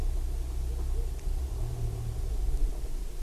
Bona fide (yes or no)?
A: yes